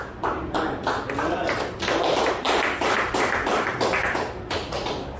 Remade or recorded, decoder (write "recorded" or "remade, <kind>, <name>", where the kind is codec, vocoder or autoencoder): remade, vocoder, BigVGAN v2